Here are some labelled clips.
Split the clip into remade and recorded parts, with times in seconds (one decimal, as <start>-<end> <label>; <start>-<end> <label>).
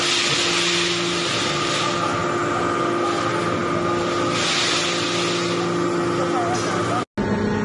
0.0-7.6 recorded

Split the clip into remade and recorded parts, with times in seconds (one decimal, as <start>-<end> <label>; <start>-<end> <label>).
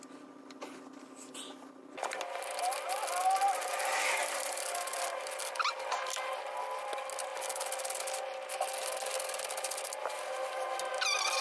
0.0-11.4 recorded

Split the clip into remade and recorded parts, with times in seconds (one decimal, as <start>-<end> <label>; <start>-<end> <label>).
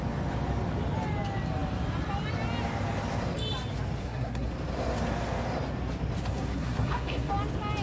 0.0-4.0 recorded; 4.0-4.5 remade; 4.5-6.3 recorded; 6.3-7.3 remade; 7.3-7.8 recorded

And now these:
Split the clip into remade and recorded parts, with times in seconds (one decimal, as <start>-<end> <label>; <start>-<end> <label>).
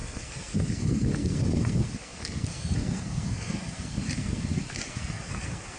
0.0-5.8 remade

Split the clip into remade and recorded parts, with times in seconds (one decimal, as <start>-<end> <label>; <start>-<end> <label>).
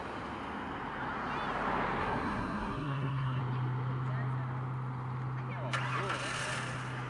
0.0-2.0 recorded; 2.0-3.4 remade; 3.4-7.1 recorded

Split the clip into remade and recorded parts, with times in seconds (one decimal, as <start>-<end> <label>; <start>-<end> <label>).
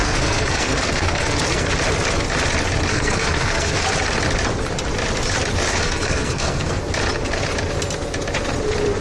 0.0-1.7 remade; 1.7-2.9 recorded; 2.9-3.8 remade; 3.8-5.7 recorded; 5.7-6.8 remade; 6.8-9.0 recorded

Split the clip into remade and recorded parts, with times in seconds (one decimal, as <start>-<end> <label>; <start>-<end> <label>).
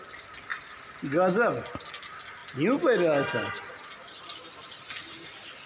0.0-5.7 recorded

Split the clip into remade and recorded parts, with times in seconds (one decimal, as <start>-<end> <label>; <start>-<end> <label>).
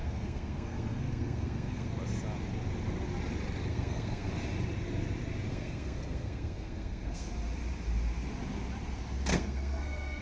0.0-1.9 remade; 1.9-3.7 recorded; 3.7-4.3 remade; 4.3-5.5 recorded; 5.5-7.3 remade; 7.3-9.3 recorded; 9.3-10.2 remade